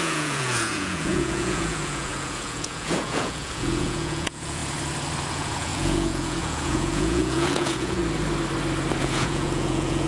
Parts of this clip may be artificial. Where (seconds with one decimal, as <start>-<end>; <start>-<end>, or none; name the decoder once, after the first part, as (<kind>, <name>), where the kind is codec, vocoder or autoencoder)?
0.0-4.6 (vocoder, Vocos); 5.3-8.0; 9.0-10.1